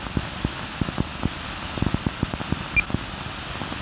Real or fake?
real